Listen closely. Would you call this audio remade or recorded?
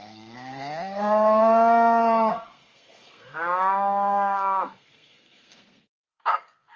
remade